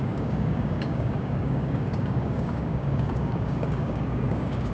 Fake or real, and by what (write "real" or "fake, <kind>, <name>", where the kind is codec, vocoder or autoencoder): fake, codec, DAC